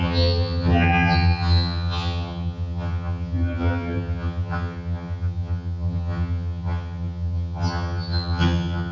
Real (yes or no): no